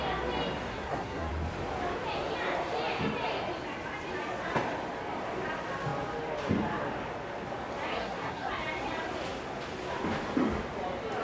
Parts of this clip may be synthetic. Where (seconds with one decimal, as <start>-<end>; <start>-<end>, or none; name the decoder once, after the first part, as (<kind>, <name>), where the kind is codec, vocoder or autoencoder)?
0.7-1.3 (codec, SNAC); 7.9-8.5